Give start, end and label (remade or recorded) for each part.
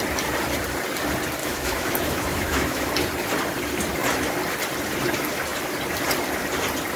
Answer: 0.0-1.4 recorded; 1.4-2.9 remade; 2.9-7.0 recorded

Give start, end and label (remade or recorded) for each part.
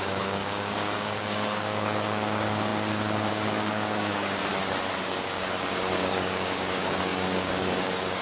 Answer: 0.0-4.4 remade; 4.4-5.0 recorded; 5.0-8.2 remade